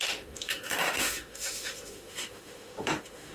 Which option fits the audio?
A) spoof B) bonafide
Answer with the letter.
A